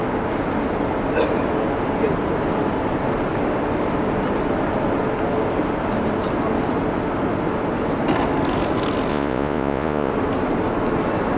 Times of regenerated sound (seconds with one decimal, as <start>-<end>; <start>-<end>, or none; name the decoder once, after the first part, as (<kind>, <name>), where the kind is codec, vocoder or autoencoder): 9.1-10.1 (vocoder, Vocos)